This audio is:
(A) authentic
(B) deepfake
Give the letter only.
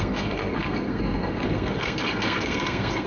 B